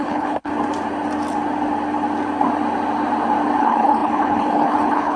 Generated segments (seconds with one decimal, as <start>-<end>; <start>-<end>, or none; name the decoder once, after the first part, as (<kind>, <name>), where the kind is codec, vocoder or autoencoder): 0.0-0.5 (codec, HILCodec); 3.6-5.2